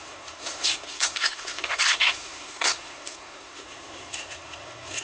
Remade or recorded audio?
remade